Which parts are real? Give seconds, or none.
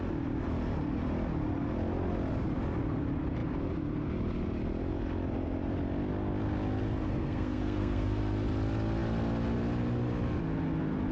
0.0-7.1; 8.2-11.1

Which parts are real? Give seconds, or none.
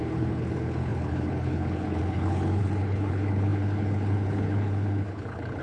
none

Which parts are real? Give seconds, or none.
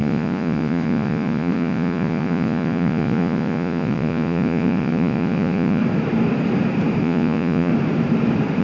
5.8-7.0; 7.7-8.6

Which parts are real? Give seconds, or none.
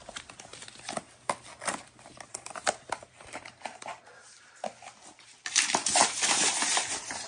0.5-2.3; 3.9-5.7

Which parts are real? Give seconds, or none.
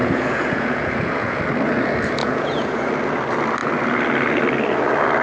1.4-2.2; 2.9-5.2